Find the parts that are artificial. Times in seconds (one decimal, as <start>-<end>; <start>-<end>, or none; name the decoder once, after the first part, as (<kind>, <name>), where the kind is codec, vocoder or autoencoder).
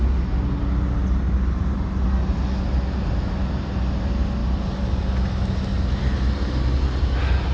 none